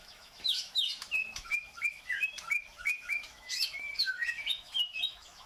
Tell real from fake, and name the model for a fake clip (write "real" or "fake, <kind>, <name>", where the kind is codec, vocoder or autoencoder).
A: fake, autoencoder, DAC-VAE